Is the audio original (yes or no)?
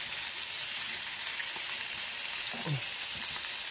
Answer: yes